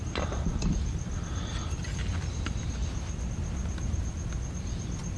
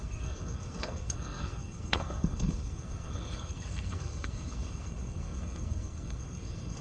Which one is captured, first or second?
first